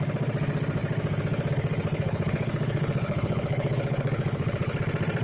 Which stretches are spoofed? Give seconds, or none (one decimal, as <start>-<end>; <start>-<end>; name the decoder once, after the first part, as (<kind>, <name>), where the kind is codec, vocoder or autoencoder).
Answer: 1.9-4.8 (codec, HILCodec)